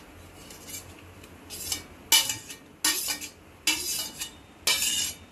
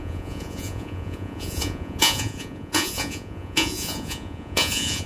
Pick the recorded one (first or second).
first